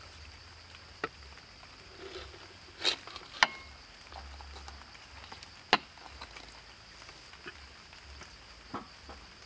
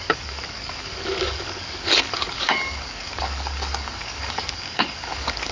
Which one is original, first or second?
first